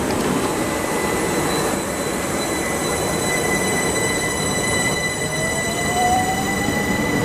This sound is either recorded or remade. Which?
remade